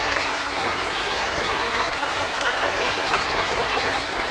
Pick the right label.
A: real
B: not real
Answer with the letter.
B